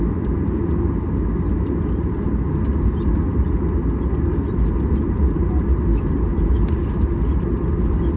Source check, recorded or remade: recorded